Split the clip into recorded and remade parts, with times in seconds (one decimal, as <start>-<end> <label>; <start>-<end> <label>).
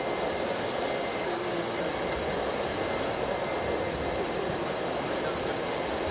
0.0-1.1 recorded; 1.1-1.8 remade; 1.8-6.1 recorded